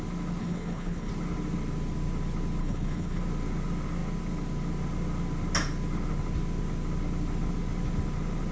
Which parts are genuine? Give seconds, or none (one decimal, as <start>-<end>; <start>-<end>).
0.0-0.4; 1.1-2.6; 3.2-8.5